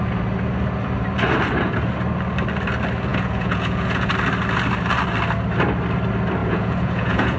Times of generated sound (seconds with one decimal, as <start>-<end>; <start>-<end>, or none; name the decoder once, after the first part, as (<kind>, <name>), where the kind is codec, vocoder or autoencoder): 3.1-4.1 (vocoder, Vocos); 6.4-7.4